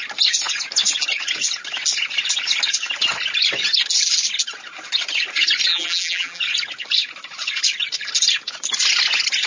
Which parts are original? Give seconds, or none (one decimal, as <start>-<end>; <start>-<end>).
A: 0.0-5.7; 6.4-9.5